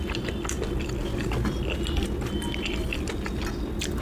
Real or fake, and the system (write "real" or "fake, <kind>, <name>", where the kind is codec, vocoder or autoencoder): real